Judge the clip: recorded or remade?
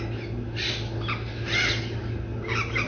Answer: recorded